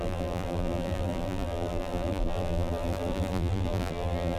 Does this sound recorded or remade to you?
remade